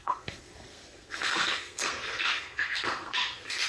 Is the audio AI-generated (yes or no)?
yes